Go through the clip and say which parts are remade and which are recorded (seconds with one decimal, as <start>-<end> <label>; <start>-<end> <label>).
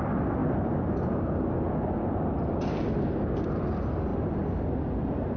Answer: 0.0-5.4 recorded